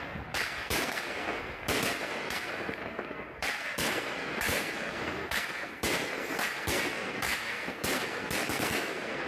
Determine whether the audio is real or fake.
fake